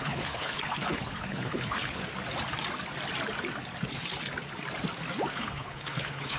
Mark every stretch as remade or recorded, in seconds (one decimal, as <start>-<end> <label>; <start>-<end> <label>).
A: 0.0-2.0 remade; 2.0-5.3 recorded; 5.3-6.4 remade